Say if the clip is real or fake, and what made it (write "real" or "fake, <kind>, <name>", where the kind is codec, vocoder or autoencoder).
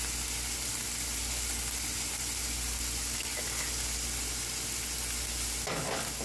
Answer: real